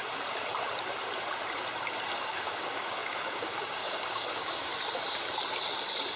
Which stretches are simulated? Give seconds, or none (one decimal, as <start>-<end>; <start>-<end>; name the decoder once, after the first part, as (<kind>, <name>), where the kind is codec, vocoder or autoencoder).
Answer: 2.3-4.7 (codec, DAC)